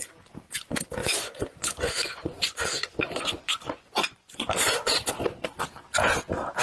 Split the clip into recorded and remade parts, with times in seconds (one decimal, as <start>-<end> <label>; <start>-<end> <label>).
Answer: 0.0-1.0 recorded; 1.0-4.9 remade; 4.9-6.6 recorded